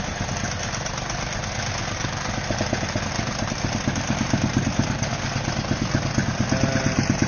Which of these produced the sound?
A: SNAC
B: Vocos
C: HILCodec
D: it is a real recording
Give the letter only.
D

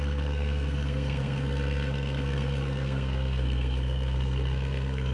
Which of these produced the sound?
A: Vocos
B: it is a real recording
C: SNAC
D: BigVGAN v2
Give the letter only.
C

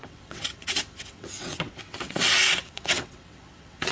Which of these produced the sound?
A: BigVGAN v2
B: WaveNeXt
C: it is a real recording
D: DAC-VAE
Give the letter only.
B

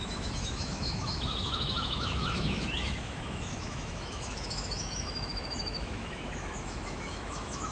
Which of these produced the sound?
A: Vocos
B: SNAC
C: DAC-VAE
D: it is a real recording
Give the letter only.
C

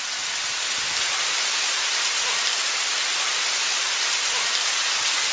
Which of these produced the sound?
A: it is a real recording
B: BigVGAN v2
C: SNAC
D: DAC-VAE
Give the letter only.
A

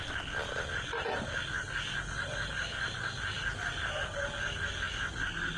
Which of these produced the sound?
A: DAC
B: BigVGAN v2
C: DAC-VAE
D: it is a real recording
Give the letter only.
D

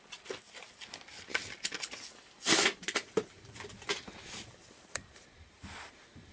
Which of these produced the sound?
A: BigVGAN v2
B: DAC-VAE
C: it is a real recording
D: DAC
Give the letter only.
C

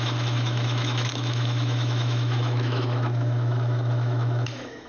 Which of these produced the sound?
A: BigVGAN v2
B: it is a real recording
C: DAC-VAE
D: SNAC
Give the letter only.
C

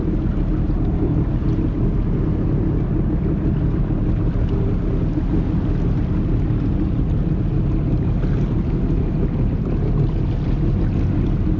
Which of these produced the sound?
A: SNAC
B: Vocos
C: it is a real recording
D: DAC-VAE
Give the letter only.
C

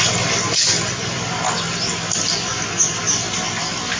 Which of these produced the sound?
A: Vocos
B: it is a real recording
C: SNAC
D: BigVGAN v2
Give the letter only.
B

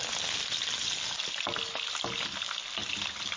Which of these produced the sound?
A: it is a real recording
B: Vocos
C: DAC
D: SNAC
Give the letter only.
A